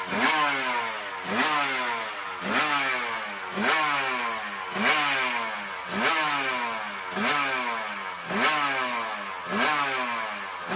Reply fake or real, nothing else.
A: real